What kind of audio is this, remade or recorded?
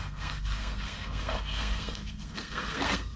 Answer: remade